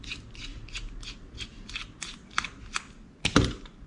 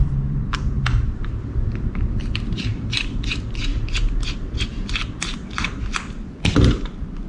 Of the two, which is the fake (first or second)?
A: second